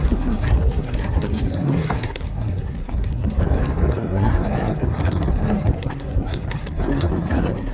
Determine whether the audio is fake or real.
fake